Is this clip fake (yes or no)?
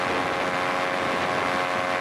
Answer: no